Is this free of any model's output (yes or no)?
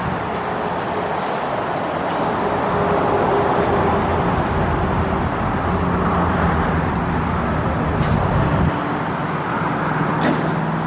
yes